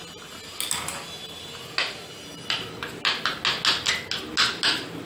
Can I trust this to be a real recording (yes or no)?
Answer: yes